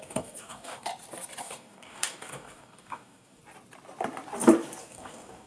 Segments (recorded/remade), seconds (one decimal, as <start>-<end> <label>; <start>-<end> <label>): 0.0-0.9 remade; 0.9-1.4 recorded; 1.4-3.4 remade; 3.4-4.8 recorded; 4.8-5.5 remade